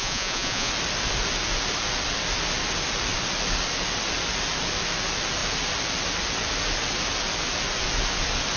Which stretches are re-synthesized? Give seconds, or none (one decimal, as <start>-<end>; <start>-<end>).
0.0-0.7